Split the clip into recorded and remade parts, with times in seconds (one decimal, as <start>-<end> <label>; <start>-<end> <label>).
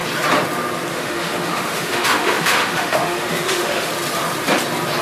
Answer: 0.0-0.9 recorded; 0.9-3.9 remade; 3.9-5.0 recorded